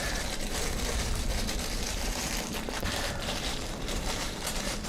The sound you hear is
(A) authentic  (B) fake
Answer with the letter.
B